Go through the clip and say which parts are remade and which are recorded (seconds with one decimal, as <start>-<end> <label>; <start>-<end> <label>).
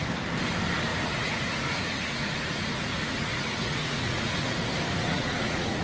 0.0-0.9 recorded; 0.9-4.4 remade; 4.4-5.0 recorded; 5.0-5.8 remade